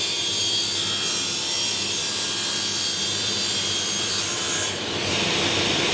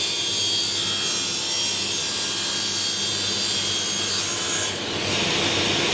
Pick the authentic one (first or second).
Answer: second